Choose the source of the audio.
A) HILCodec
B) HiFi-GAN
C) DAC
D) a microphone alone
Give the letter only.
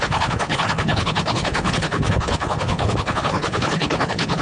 A